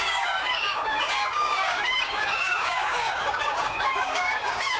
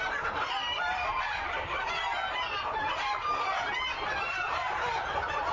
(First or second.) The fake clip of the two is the first